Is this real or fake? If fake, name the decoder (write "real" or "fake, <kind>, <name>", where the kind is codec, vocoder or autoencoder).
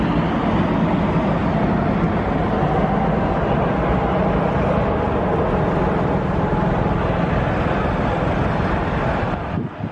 real